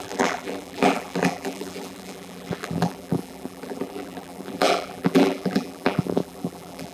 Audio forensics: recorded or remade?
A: remade